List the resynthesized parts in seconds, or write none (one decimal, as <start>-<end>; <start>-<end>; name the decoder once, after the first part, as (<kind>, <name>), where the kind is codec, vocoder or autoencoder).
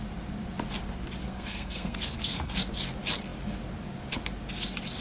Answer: 1.2-2.6 (codec, SNAC)